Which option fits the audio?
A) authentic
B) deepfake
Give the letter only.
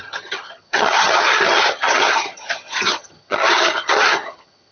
B